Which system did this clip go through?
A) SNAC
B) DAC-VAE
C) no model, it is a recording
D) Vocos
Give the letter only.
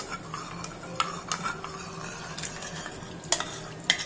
C